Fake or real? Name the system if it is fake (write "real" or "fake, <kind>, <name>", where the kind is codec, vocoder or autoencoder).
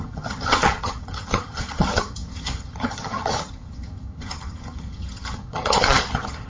fake, vocoder, HiFi-GAN